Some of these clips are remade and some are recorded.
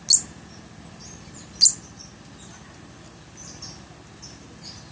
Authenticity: recorded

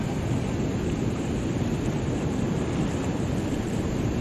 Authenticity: recorded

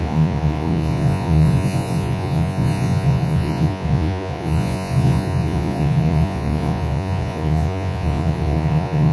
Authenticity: remade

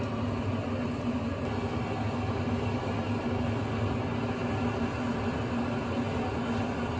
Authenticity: recorded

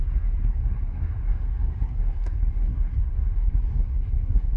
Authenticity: remade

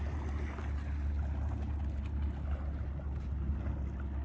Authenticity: recorded